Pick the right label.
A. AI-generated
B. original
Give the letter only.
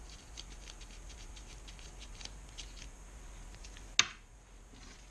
B